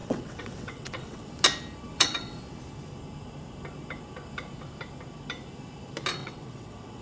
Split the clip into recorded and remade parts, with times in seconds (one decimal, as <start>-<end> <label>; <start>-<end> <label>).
0.0-1.3 remade; 1.3-1.9 recorded; 1.9-2.4 remade; 2.4-6.2 recorded; 6.2-7.0 remade